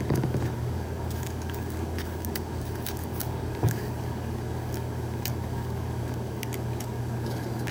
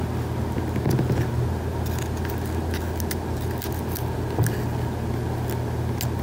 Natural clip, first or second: second